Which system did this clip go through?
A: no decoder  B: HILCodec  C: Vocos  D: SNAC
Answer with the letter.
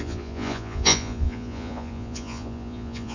C